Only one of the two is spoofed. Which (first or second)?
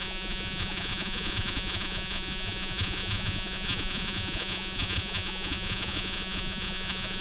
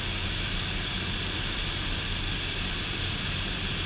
first